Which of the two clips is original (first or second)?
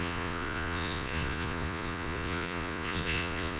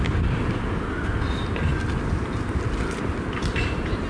second